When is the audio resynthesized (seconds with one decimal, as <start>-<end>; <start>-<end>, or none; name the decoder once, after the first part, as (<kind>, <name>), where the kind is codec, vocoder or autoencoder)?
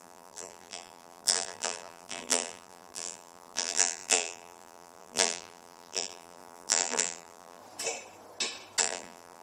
0.0-7.6 (vocoder, BigVGAN v2); 8.8-9.4